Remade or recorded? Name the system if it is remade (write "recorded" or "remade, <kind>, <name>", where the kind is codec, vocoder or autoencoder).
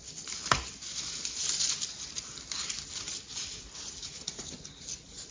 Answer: recorded